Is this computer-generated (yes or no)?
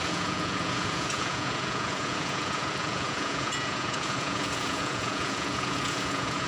yes